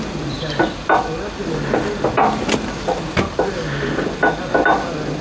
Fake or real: real